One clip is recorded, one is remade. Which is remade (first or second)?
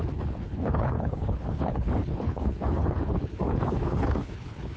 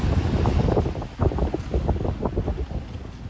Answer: first